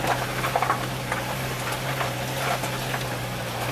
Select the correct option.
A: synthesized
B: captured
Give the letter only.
B